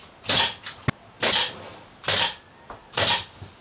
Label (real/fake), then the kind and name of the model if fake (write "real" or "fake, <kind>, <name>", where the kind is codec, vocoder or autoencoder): real